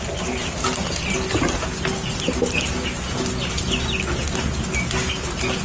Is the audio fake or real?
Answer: real